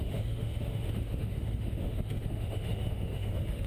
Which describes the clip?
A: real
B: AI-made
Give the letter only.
B